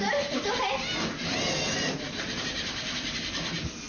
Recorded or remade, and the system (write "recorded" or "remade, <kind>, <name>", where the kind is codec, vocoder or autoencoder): recorded